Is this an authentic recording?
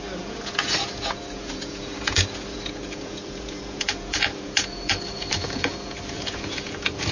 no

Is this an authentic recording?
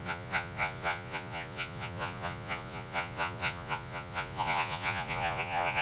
no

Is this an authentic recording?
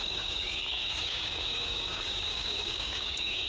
no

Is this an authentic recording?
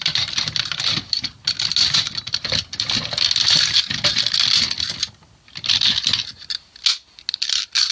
yes